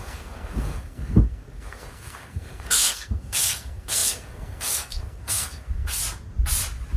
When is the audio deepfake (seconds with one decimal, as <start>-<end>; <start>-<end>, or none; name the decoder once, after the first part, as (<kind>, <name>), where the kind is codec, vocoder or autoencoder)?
0.0-6.0 (codec, SNAC)